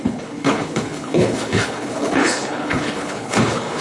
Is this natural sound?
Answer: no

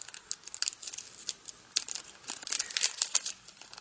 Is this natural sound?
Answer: yes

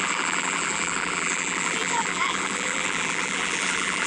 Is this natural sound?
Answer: no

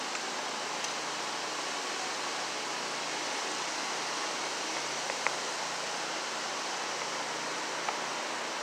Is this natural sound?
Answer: yes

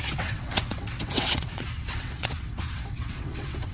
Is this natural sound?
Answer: no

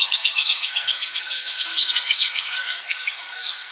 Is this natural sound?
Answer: no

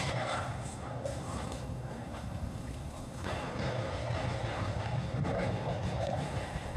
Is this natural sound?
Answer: no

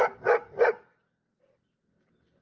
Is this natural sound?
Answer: yes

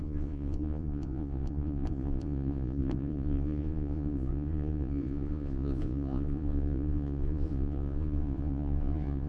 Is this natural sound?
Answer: no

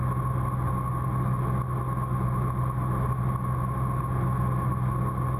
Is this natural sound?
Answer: yes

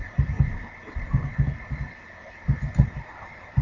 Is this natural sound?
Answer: no